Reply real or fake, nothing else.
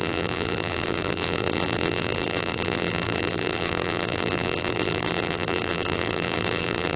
fake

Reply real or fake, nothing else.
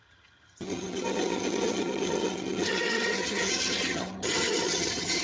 fake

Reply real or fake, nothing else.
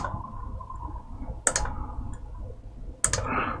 real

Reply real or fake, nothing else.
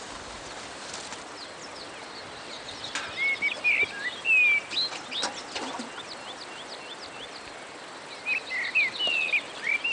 real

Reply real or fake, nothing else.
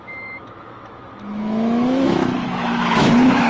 fake